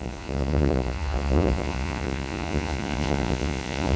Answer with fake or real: fake